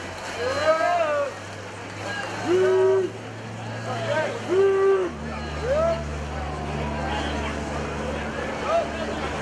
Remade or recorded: recorded